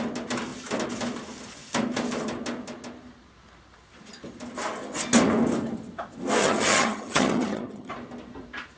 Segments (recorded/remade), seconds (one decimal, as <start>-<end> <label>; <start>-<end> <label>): 0.0-6.4 recorded; 6.4-7.9 remade; 7.9-8.8 recorded